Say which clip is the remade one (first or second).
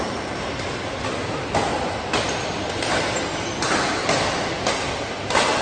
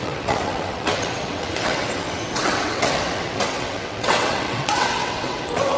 second